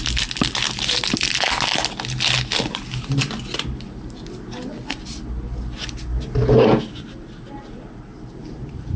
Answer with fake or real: real